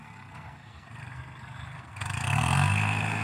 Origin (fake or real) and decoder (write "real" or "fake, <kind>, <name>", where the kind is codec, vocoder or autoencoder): fake, codec, SNAC